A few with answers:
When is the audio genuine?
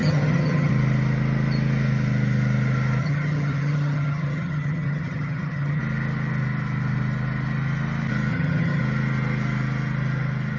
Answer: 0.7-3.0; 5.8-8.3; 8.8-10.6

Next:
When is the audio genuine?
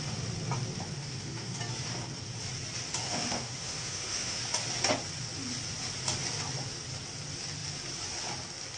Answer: 0.0-1.0; 1.6-3.0; 4.4-8.8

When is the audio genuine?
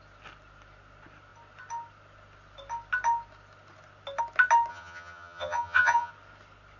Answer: 0.0-4.7; 6.1-6.8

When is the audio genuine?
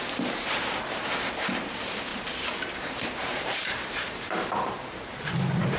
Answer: 0.0-2.1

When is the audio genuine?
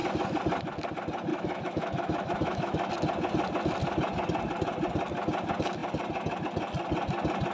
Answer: 0.0-1.3; 2.9-7.5